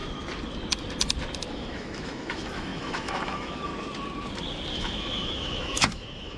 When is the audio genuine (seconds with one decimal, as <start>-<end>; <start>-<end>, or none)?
0.0-1.5; 3.7-4.7